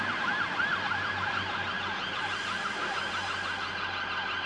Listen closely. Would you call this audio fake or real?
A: real